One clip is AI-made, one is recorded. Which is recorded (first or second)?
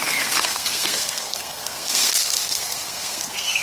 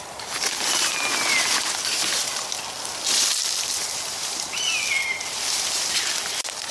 second